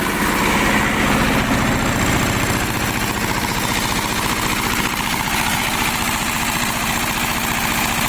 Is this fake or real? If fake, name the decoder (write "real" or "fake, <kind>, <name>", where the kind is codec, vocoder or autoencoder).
real